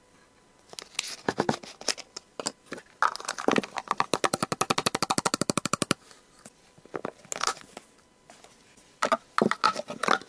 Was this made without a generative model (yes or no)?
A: yes